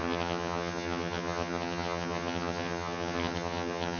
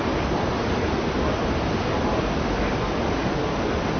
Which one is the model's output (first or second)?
first